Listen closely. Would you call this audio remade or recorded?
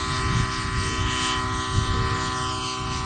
recorded